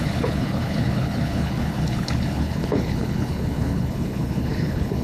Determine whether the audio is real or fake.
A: fake